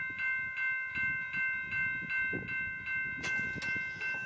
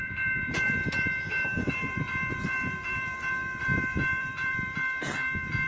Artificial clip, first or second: second